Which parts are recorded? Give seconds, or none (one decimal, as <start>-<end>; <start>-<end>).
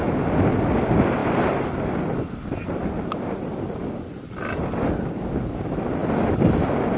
0.0-7.0